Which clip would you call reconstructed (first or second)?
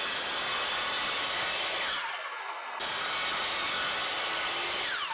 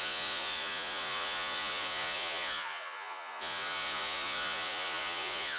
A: second